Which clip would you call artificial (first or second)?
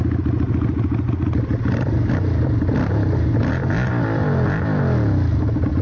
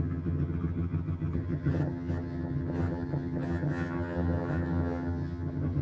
second